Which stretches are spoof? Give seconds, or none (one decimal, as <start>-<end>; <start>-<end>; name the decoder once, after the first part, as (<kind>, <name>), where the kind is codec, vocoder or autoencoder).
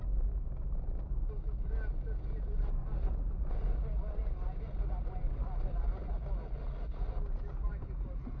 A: 2.8-3.5 (vocoder, BigVGAN v2)